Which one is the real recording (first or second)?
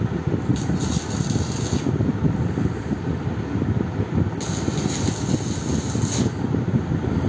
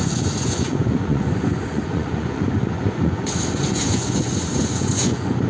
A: first